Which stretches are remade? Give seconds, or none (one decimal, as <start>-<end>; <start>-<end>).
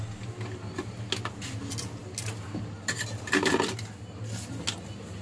none